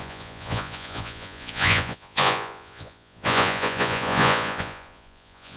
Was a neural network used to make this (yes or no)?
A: yes